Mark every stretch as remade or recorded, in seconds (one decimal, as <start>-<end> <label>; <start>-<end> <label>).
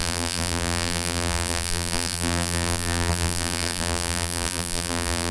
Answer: 0.0-5.3 remade